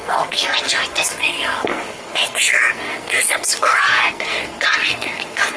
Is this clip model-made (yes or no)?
yes